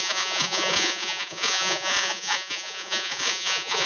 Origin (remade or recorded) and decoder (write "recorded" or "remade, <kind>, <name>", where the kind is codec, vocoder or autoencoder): remade, vocoder, Vocos